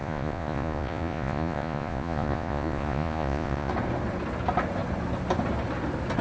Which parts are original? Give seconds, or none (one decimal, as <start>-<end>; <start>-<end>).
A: 3.7-6.2